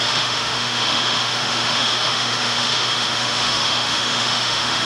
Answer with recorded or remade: remade